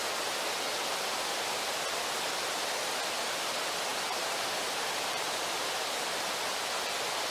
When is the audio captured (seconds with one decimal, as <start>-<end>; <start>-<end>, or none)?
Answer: 0.0-3.9; 6.6-7.3